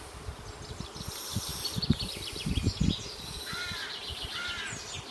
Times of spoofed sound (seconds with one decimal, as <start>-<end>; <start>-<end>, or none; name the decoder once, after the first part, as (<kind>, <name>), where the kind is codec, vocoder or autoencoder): none